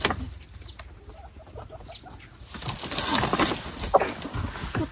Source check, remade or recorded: recorded